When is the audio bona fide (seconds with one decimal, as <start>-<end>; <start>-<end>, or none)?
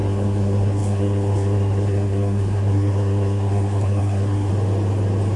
4.5-5.4